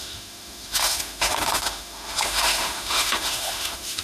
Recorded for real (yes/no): no